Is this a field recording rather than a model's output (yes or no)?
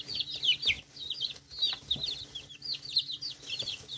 yes